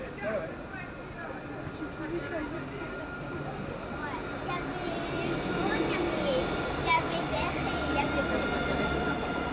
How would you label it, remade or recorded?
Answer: recorded